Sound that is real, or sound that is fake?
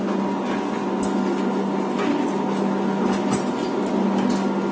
real